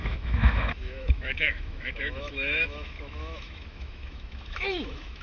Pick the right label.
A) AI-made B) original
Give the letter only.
A